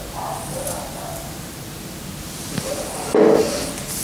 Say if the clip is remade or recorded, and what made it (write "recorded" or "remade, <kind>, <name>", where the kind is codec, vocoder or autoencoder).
recorded